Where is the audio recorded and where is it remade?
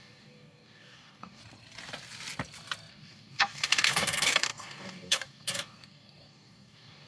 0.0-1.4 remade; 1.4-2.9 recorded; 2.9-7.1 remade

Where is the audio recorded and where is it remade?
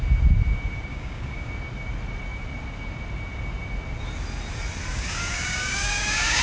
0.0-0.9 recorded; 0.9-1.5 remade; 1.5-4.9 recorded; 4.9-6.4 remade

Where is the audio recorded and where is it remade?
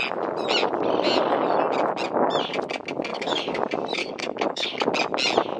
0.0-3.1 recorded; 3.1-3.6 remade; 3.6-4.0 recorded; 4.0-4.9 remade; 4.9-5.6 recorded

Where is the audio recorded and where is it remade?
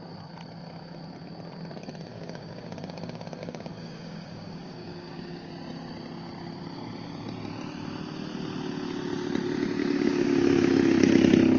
0.0-2.1 recorded; 2.1-5.5 remade; 5.5-9.8 recorded; 9.8-10.7 remade; 10.7-11.6 recorded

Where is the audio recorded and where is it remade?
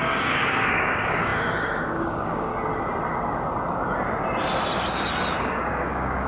0.0-2.5 remade; 2.5-5.4 recorded; 5.4-6.3 remade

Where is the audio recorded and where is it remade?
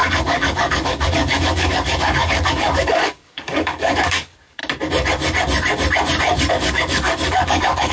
0.0-4.6 remade; 4.6-6.5 recorded; 6.5-7.9 remade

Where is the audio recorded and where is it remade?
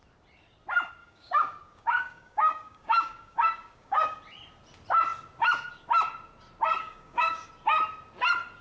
0.0-1.0 recorded; 1.0-4.2 remade; 4.2-6.8 recorded; 6.8-7.5 remade; 7.5-8.6 recorded